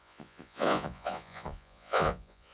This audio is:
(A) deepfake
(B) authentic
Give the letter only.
A